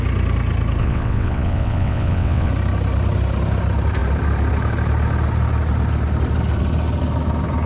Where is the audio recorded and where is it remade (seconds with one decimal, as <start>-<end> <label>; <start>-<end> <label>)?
0.0-0.8 recorded; 0.8-2.5 remade; 2.5-7.7 recorded